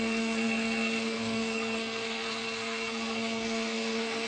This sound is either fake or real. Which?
fake